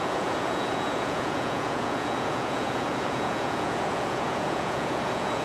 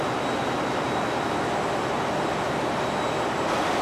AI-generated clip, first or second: first